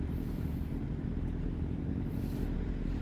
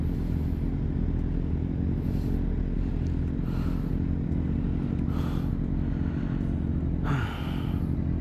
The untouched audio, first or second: second